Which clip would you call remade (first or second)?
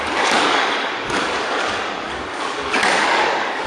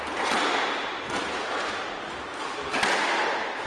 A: first